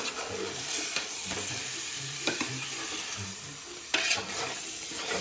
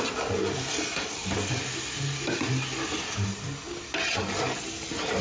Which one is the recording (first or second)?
second